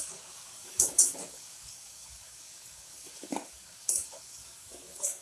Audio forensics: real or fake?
fake